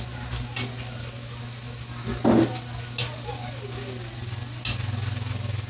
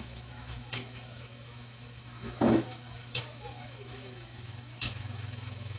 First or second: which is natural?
first